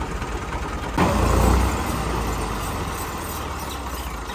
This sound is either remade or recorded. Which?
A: recorded